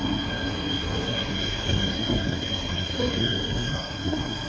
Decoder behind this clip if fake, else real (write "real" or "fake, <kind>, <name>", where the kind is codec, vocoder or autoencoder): fake, codec, SNAC